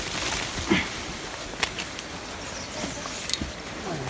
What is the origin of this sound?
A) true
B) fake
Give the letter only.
A